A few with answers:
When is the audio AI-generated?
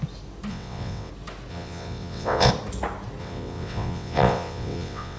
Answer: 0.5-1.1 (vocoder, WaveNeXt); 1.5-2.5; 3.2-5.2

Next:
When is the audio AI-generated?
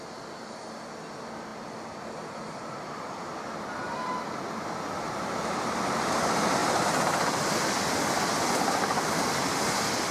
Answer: none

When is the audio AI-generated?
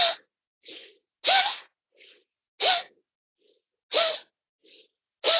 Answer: none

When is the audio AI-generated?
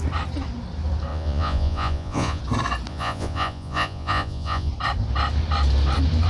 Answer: 1.1-2.4 (vocoder, Vocos); 2.9-4.7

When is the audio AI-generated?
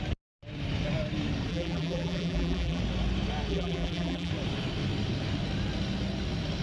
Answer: 1.5-2.8 (vocoder, BigVGAN v2); 3.5-4.3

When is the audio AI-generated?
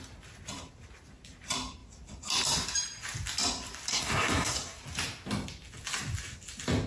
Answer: 3.9-4.8 (codec, SNAC)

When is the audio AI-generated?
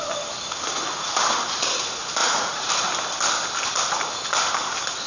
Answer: 2.2-2.7 (vocoder, Vocos)